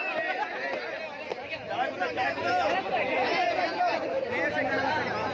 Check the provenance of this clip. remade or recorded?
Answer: recorded